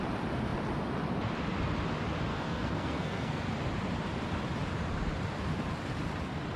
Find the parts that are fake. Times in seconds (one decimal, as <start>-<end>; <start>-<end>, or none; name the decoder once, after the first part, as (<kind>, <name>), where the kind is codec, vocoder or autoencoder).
2.3-3.4 (codec, SNAC)